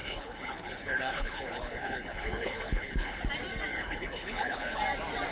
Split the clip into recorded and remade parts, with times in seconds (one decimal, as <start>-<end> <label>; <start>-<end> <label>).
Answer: 0.0-3.2 remade; 3.2-3.7 recorded; 3.7-4.8 remade; 4.8-5.3 recorded